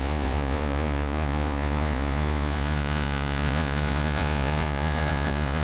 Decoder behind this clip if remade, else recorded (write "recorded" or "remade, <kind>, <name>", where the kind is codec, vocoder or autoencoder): remade, vocoder, Vocos